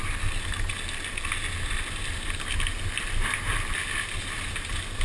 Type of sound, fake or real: real